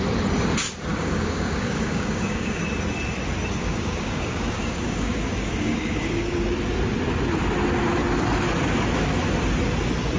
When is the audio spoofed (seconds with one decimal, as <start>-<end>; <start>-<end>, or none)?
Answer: 0.9-2.6; 3.5-6.3